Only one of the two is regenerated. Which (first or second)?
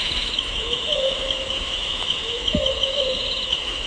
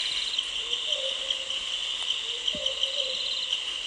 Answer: first